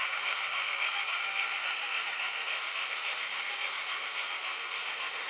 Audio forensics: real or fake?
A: fake